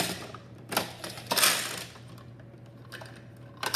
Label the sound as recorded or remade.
recorded